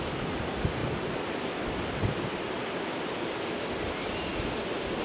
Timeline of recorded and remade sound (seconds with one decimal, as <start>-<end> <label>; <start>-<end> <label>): 0.0-4.3 recorded; 4.3-5.0 remade